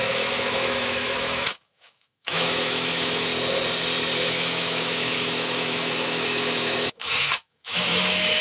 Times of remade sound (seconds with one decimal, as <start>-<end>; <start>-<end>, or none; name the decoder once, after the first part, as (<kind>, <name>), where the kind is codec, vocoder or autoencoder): 0.0-3.3 (autoencoder, DAC-VAE); 4.3-8.4